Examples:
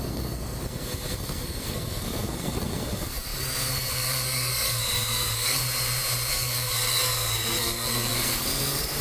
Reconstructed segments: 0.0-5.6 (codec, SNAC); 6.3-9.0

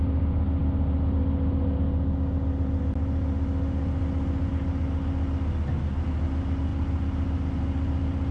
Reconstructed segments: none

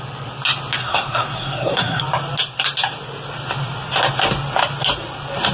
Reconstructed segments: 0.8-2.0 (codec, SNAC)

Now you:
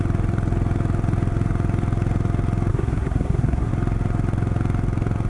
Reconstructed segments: 2.7-3.7 (codec, SNAC)

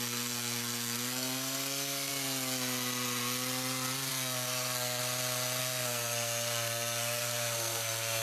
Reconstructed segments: 0.0-2.1 (codec, SNAC); 4.1-5.0; 5.6-8.2

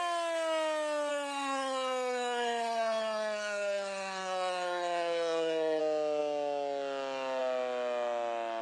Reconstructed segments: 1.1-5.8 (codec, SNAC)

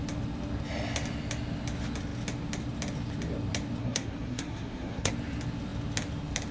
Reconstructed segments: 3.8-5.1 (codec, SNAC)